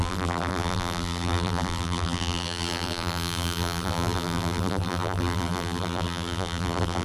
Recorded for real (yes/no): no